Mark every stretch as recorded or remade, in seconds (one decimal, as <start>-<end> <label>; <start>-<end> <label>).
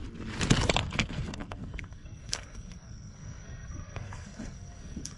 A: 0.0-0.8 recorded; 0.8-5.2 remade